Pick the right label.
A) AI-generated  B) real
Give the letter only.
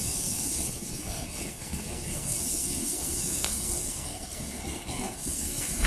A